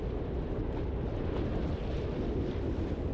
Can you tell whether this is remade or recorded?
recorded